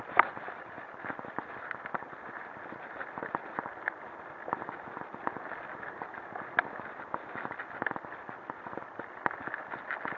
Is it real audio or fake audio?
real